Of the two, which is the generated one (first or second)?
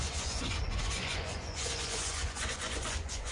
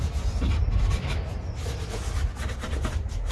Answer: first